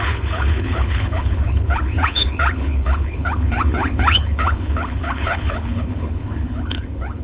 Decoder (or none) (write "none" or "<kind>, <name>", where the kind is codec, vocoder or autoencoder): codec, HILCodec